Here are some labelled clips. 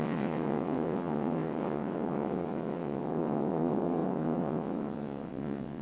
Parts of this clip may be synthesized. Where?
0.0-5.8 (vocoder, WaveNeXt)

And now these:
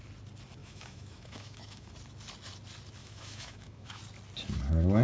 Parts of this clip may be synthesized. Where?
0.6-1.9 (autoencoder, DAC-VAE); 3.0-4.0

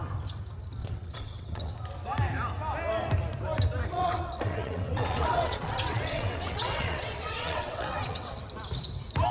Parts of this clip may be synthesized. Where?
0.8-1.7 (vocoder, WaveNeXt); 3.9-8.4

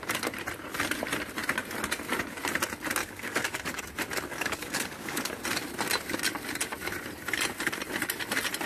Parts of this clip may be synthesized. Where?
3.0-3.8 (codec, DAC); 4.3-5.3